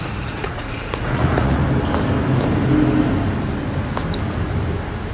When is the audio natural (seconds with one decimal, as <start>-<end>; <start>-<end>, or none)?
1.6-5.1